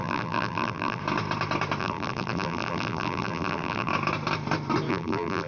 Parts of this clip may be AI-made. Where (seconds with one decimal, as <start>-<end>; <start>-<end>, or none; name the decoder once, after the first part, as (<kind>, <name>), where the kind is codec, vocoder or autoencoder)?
0.0-1.0 (vocoder, BigVGAN v2); 1.8-3.9; 4.9-5.5

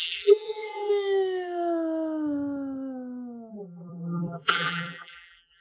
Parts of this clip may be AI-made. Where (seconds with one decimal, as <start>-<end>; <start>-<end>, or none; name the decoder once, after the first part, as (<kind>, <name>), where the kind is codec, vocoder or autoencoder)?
0.0-0.9 (vocoder, BigVGAN v2); 3.5-5.6

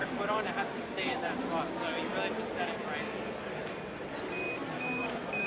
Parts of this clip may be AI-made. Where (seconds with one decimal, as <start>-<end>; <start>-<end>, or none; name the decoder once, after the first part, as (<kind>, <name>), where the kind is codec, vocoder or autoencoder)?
0.0-1.4 (vocoder, BigVGAN v2); 5.0-5.5

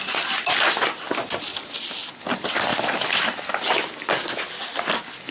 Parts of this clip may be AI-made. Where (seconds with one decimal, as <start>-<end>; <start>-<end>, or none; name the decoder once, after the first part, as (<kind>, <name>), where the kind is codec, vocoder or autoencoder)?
none

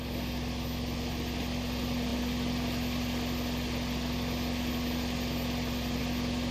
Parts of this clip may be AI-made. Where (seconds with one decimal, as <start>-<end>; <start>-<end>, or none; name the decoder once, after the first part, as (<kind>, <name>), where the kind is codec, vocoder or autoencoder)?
none